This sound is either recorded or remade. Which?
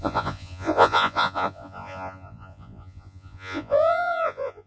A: remade